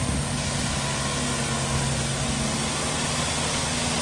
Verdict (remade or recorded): recorded